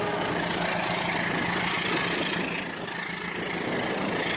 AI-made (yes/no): no